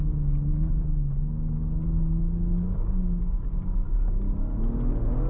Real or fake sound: real